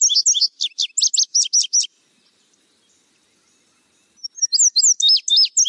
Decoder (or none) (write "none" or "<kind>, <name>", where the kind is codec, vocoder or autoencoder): none